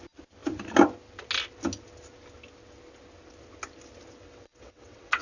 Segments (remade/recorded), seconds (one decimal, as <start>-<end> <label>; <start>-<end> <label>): 0.0-4.2 recorded; 4.2-5.2 remade